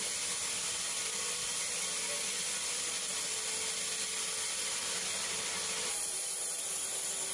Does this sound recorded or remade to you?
recorded